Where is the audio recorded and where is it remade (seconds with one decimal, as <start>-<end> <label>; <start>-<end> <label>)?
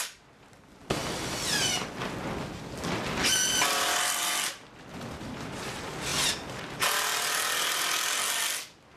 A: 0.0-9.0 recorded